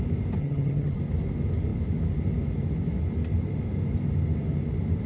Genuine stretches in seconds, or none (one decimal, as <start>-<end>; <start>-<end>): 0.0-0.4; 1.0-5.1